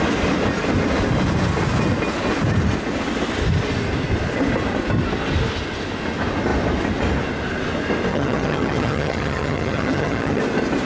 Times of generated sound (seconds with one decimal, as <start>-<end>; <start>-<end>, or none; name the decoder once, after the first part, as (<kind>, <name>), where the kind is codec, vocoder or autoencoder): 8.1-10.4 (vocoder, HiFi-GAN)